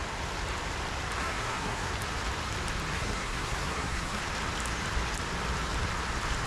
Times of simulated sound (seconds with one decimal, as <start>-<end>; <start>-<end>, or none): 1.2-1.9; 2.9-4.2